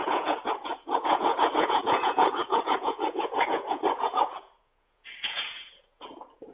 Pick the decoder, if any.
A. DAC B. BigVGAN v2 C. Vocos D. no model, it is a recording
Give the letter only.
C